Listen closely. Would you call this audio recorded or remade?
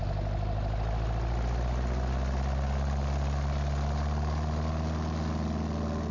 recorded